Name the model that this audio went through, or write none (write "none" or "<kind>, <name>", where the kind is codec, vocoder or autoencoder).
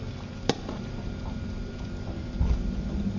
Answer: vocoder, BigVGAN v2